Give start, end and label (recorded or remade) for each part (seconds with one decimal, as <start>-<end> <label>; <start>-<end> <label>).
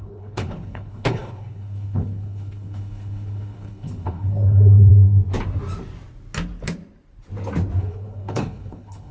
0.0-4.9 remade; 4.9-7.8 recorded; 7.8-9.1 remade